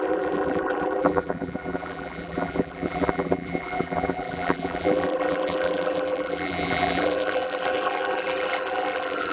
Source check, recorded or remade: remade